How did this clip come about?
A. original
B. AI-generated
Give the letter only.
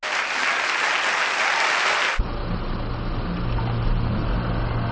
A